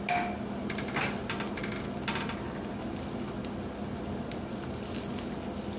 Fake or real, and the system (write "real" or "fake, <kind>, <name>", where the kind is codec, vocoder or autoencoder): real